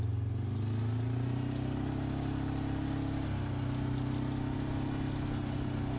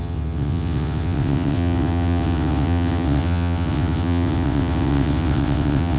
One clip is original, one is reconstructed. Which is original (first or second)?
first